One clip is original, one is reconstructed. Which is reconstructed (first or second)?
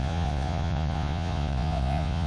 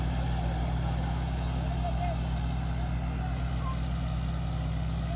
first